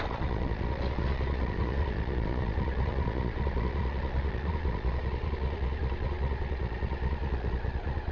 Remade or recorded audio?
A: remade